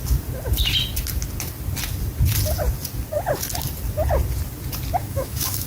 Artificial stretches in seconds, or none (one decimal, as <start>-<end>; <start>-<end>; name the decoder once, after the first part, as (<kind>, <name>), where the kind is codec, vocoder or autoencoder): 5.0-5.7 (autoencoder, DAC-VAE)